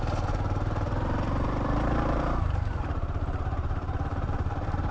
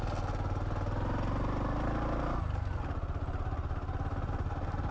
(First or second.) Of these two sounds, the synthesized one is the first